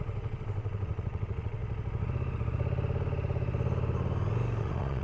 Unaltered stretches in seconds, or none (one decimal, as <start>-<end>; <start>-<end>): 1.6-4.6